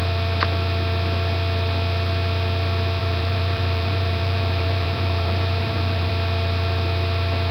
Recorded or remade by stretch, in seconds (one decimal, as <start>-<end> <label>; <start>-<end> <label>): 0.0-3.0 recorded; 3.0-6.1 remade; 6.1-7.5 recorded